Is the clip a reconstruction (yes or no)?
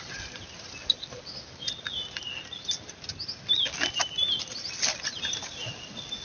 no